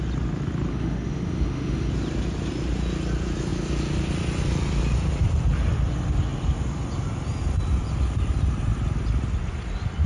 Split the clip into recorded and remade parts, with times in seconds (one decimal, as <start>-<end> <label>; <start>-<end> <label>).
0.0-0.7 recorded; 0.7-1.9 remade; 1.9-10.1 recorded